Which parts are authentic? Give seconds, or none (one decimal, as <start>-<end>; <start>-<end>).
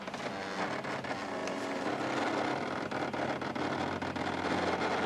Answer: 0.0-5.1